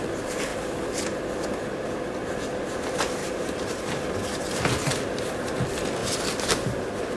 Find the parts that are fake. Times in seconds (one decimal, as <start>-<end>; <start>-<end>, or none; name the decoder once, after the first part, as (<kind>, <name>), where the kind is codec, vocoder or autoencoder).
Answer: 3.2-3.8 (vocoder, BigVGAN v2)